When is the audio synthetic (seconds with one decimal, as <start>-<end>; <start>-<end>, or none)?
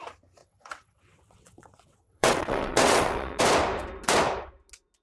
0.4-3.4